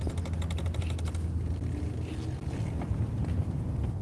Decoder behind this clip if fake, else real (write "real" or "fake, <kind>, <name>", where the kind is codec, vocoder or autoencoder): real